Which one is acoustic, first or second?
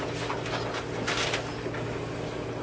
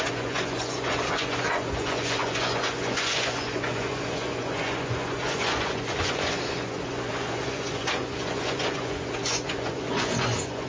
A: first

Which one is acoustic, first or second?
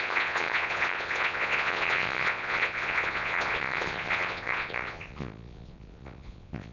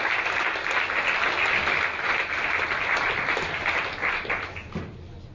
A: second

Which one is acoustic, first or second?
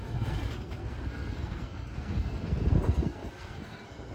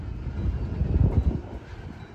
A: second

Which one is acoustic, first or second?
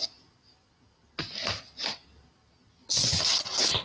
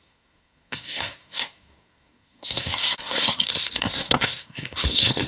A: first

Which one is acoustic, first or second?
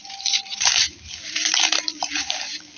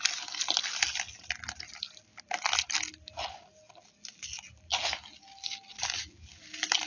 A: second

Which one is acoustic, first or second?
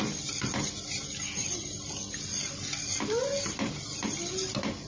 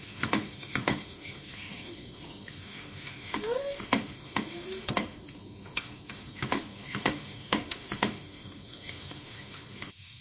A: first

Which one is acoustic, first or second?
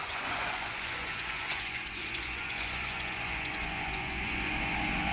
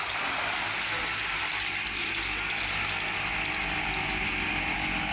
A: second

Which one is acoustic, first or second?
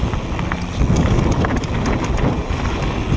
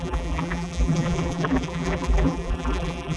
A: first